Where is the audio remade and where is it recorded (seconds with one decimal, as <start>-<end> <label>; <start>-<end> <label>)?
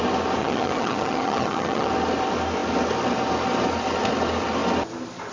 0.0-0.4 recorded; 0.4-1.9 remade; 1.9-5.3 recorded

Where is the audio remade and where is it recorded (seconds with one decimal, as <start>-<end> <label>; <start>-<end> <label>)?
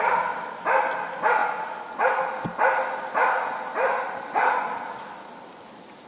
0.0-6.1 recorded